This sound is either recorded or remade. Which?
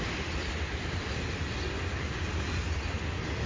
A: recorded